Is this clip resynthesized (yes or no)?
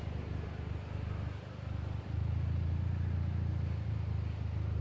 no